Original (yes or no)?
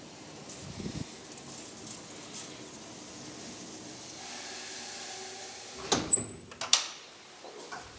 yes